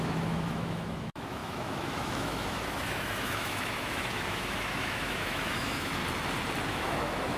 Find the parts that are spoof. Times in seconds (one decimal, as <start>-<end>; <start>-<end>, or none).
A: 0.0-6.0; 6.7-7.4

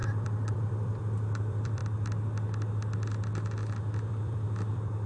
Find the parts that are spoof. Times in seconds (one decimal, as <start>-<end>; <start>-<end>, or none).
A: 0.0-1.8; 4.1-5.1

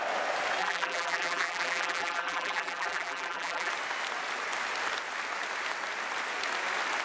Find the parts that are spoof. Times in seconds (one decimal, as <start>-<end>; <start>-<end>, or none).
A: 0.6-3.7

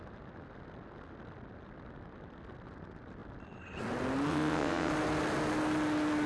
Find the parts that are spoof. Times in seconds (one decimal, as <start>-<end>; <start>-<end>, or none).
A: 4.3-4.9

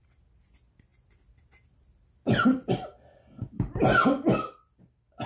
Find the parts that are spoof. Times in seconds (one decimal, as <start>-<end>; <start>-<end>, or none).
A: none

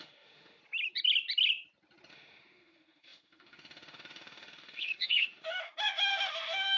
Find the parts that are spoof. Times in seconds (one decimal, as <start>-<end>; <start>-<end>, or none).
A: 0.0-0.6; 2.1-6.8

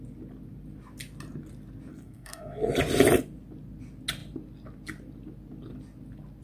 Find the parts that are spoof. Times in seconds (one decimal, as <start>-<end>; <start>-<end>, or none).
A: 1.9-2.7